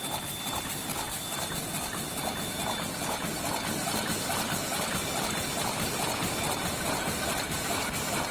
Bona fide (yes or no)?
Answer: yes